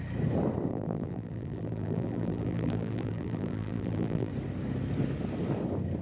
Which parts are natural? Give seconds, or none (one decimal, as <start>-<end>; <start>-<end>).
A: 0.0-0.7; 4.3-6.0